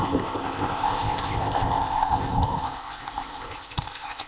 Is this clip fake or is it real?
fake